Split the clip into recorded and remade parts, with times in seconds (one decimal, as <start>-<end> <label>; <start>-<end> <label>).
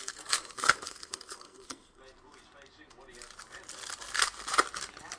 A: 0.0-2.0 remade; 2.0-5.2 recorded